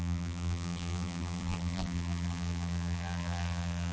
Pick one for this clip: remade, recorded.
remade